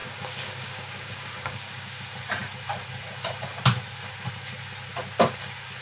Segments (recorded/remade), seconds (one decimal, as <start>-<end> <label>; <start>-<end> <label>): 0.0-2.0 remade; 2.0-5.8 recorded